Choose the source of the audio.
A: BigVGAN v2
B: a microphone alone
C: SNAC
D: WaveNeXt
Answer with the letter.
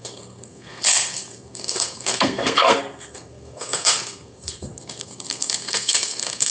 C